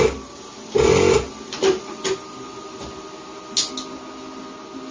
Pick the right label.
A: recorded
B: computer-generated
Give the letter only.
A